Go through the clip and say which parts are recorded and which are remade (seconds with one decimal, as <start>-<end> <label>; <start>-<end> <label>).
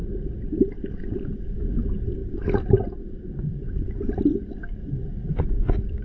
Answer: 0.0-6.0 recorded